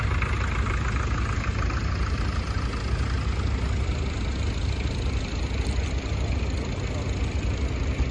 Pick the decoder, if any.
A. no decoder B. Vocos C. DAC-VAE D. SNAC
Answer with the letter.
A